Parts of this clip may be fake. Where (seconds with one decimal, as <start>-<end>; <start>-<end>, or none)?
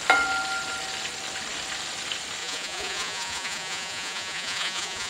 2.4-5.1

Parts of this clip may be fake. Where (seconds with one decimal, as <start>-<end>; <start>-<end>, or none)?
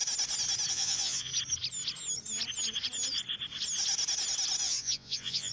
0.7-1.3; 4.6-5.5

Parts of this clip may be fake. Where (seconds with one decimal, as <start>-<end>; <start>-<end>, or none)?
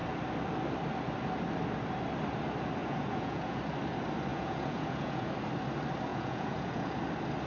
2.8-3.6; 4.3-5.3; 6.1-7.0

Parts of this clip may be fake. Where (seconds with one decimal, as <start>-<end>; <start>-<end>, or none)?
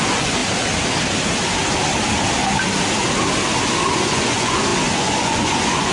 0.0-0.4; 3.9-5.9